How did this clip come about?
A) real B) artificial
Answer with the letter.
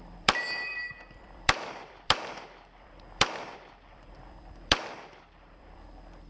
B